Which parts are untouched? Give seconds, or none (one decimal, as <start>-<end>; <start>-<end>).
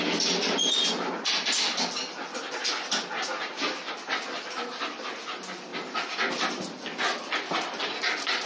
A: 0.0-8.5